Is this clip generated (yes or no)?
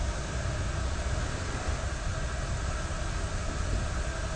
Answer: no